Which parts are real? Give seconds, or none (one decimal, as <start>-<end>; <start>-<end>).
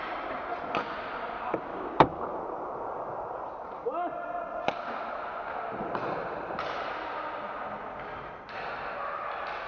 0.0-1.7; 2.3-9.7